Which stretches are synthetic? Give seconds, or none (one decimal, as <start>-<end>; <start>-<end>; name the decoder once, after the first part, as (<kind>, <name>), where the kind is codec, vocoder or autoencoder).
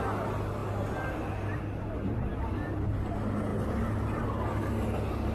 2.3-2.9 (vocoder, BigVGAN v2); 3.5-4.3